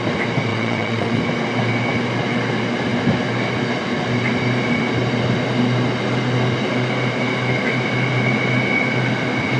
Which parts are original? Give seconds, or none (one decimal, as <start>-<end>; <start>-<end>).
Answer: 0.0-0.5; 1.2-9.6